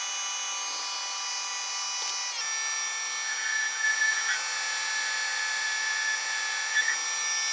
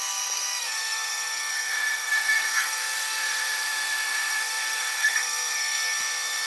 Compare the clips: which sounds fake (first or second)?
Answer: second